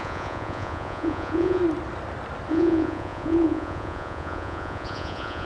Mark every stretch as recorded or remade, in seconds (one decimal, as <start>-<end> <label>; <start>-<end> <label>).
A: 0.0-1.6 remade; 1.6-2.5 recorded; 2.5-5.5 remade